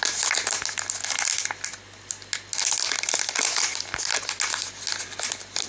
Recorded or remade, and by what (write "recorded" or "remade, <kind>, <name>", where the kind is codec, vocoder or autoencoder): recorded